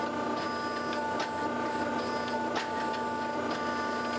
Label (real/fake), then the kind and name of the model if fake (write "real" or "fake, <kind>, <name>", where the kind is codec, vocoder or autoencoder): real